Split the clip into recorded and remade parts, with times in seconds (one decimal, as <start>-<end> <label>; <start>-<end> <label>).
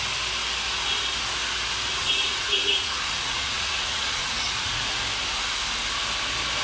0.0-2.0 recorded; 2.0-5.0 remade; 5.0-6.6 recorded